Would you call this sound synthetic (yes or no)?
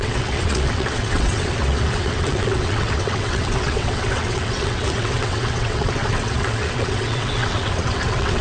yes